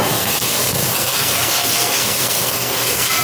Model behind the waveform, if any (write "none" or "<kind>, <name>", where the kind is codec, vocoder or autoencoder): codec, SNAC